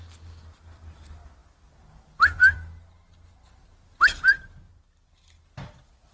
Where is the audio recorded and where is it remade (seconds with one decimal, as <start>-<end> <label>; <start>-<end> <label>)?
0.0-6.1 remade